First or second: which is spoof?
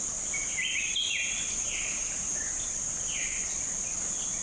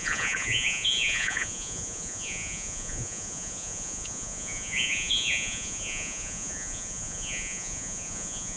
second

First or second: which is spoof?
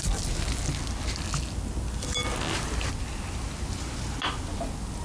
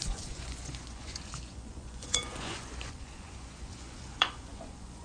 second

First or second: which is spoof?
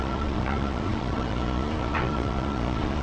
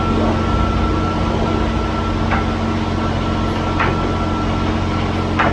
first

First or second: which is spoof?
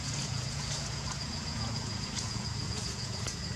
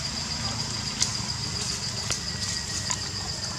first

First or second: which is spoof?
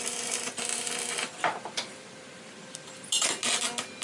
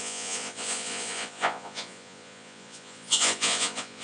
second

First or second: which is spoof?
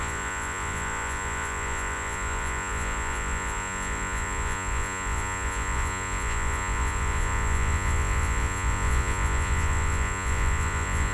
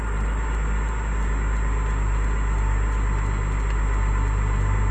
first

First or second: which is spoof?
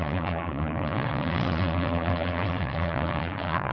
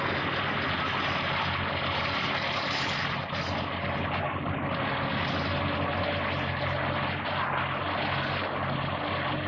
first